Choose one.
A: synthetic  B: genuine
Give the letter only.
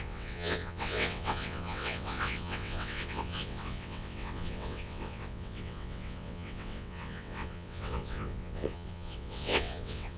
A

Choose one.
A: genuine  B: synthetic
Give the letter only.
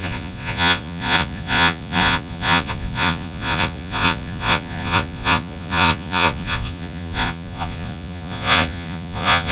B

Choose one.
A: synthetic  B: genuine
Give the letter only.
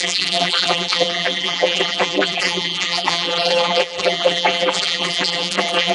A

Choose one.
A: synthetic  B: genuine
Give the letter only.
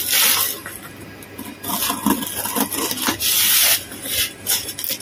B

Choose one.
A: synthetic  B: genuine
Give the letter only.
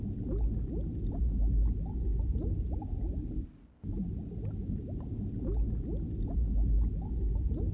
B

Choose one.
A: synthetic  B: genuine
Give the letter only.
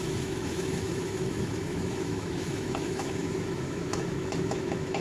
A